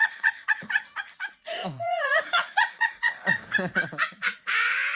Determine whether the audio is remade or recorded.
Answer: remade